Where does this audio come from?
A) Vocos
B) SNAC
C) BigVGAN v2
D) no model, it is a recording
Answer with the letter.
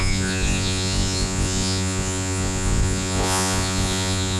A